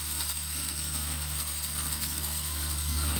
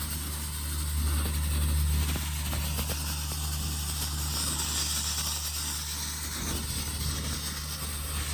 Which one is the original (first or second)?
second